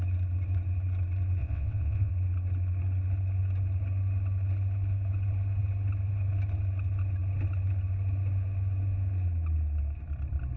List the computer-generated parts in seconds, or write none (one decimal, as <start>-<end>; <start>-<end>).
1.4-2.1